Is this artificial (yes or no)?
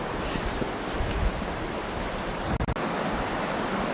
no